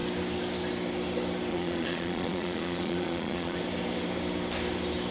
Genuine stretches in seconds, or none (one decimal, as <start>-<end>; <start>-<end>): 0.0-1.5; 3.6-5.1